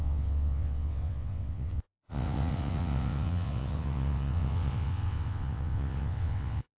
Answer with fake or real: fake